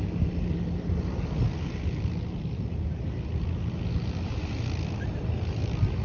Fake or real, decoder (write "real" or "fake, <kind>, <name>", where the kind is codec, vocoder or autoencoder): real